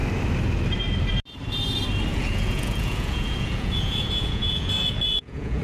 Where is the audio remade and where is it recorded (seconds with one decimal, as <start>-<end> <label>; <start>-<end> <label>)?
0.0-2.1 recorded; 2.1-5.6 remade